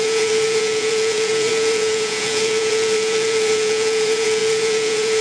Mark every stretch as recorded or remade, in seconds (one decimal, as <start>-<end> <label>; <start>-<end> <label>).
0.0-5.2 remade